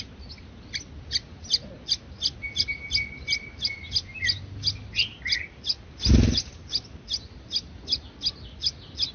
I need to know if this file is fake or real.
real